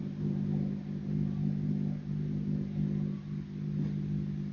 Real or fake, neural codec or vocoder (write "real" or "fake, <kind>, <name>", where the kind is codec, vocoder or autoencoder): real